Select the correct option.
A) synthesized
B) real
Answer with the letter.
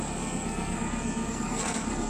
A